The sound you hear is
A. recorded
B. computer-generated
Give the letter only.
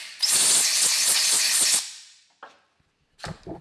A